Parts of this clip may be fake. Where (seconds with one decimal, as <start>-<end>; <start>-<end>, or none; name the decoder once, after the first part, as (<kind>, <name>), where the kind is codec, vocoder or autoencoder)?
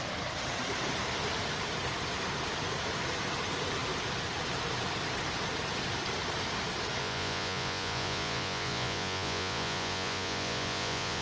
7.0-11.2 (vocoder, Vocos)